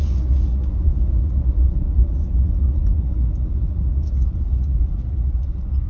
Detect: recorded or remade remade